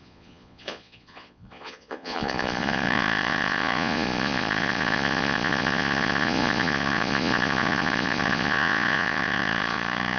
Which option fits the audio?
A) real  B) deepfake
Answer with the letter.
B